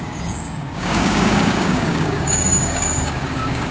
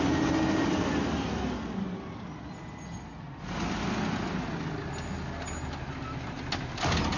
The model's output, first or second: first